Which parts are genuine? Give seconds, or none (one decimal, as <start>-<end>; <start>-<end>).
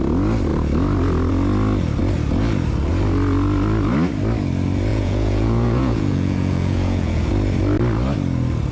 0.0-4.9; 7.3-8.7